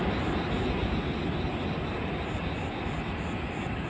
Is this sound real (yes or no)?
yes